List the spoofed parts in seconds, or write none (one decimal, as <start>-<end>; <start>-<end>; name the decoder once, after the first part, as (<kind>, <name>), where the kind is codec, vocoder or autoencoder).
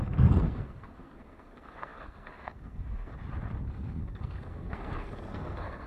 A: 0.0-3.1 (codec, SNAC); 3.7-5.9